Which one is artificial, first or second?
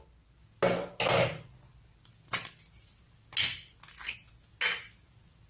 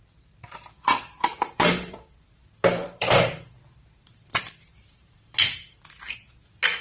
second